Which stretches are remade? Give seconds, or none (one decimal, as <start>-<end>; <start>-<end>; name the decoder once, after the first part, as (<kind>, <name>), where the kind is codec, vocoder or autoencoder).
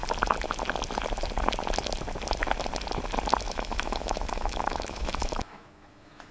3.4-6.3 (autoencoder, DAC-VAE)